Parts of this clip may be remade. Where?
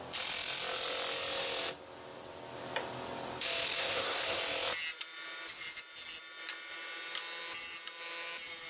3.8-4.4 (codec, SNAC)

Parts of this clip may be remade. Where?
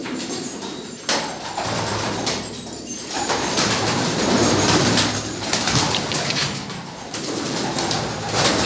0.0-1.0 (vocoder, BigVGAN v2); 1.9-5.5; 6.4-7.6